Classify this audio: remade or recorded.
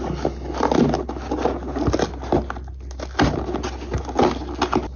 recorded